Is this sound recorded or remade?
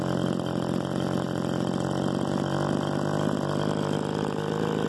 recorded